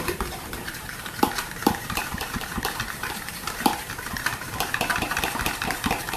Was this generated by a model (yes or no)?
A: yes